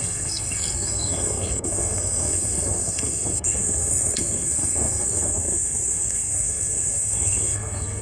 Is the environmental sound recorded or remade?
remade